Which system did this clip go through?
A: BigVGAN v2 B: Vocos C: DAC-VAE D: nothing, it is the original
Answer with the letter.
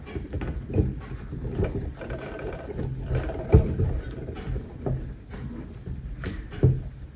D